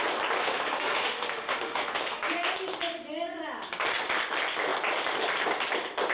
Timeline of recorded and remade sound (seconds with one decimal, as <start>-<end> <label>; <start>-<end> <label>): 0.0-0.4 recorded; 0.4-2.3 remade; 2.3-6.1 recorded